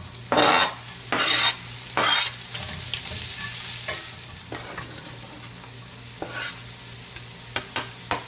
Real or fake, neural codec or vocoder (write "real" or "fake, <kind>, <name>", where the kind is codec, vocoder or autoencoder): real